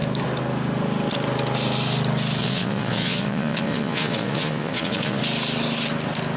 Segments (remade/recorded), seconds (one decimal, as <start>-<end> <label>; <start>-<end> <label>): 0.0-2.4 recorded; 2.4-5.2 remade; 5.2-6.4 recorded